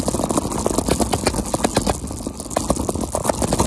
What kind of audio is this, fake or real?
real